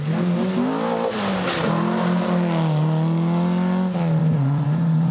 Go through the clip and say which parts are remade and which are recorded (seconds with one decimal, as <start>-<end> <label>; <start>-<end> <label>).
0.0-4.2 recorded; 4.2-5.1 remade